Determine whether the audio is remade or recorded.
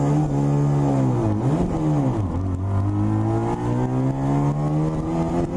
recorded